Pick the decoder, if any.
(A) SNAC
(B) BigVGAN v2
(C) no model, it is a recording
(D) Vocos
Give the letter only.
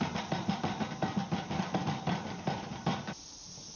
C